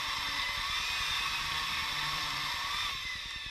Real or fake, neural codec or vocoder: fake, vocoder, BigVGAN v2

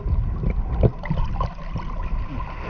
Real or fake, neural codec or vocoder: real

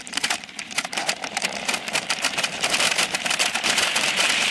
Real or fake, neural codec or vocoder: fake, vocoder, BigVGAN v2